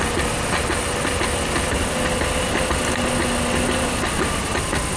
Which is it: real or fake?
real